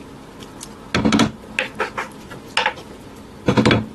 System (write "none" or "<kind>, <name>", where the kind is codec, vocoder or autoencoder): none